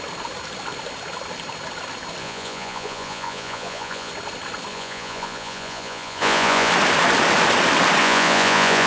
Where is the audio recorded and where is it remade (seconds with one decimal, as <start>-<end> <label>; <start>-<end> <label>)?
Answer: 0.0-2.2 recorded; 2.2-4.1 remade; 4.1-4.7 recorded; 4.7-6.7 remade; 6.7-8.0 recorded; 8.0-8.9 remade